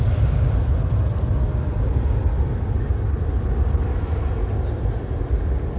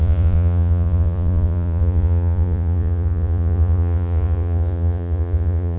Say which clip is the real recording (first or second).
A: first